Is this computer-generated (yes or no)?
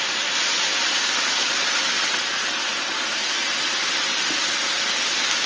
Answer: no